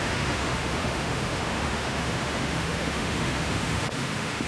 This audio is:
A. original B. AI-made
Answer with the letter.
B